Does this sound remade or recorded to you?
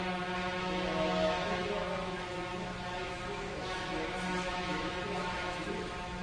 remade